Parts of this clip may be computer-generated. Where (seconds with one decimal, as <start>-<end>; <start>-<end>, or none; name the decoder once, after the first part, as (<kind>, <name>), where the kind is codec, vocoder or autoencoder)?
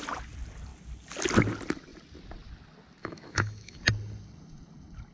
3.0-3.8 (autoencoder, DAC-VAE)